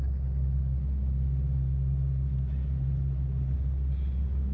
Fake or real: real